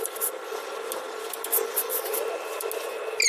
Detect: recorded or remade recorded